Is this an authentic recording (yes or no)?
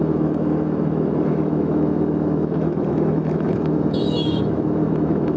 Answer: no